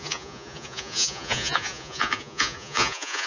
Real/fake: fake